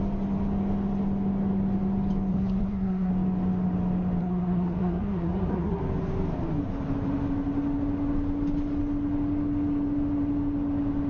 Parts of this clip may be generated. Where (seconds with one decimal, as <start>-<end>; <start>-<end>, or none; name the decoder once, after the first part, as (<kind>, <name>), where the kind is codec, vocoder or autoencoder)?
2.3-3.1 (codec, SNAC); 4.2-5.8